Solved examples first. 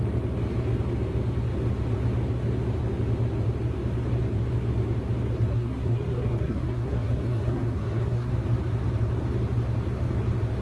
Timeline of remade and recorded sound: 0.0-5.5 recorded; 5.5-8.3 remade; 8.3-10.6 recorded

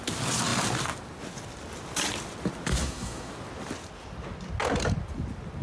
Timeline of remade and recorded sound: 0.0-2.8 recorded; 2.8-3.3 remade; 3.3-5.6 recorded

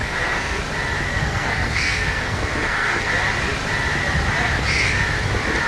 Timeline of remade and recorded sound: 0.0-0.6 remade; 0.6-1.1 recorded; 1.1-3.1 remade; 3.1-5.7 recorded

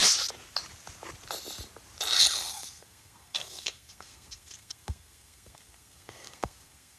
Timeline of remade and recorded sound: 0.0-2.5 recorded; 2.5-7.0 remade

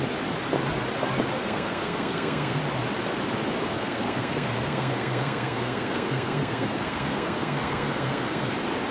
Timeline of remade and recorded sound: 0.0-1.4 recorded; 1.4-2.6 remade; 2.6-3.7 recorded; 3.7-8.5 remade; 8.5-8.9 recorded